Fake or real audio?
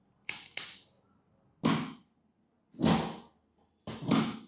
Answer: real